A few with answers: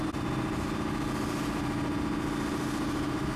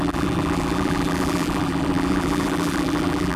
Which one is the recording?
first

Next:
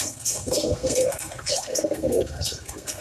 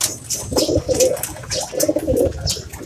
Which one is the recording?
second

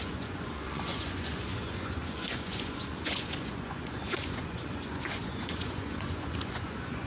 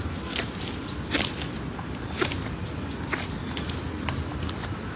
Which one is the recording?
second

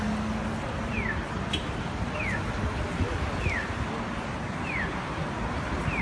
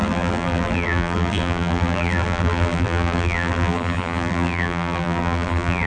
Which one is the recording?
first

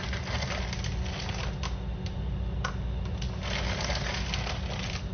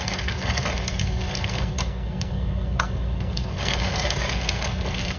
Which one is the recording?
first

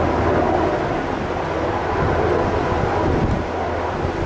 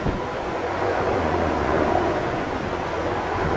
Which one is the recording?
first